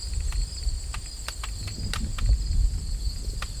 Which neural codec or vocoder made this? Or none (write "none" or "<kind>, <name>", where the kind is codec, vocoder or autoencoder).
none